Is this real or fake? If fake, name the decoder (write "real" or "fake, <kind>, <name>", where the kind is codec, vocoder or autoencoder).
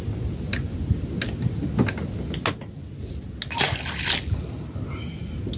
real